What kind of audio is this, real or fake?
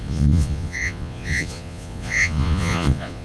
fake